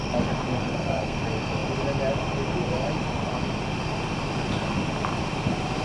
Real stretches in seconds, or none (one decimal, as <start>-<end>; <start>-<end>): 0.0-0.6; 1.2-5.8